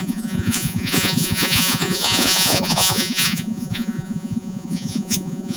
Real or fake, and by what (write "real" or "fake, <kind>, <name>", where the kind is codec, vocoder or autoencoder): fake, vocoder, Vocos